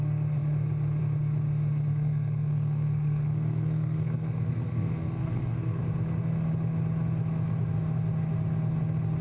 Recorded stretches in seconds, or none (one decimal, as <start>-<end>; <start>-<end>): 0.0-1.9; 5.8-9.2